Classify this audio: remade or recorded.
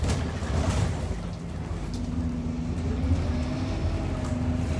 recorded